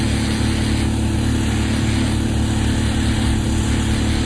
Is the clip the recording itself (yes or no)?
yes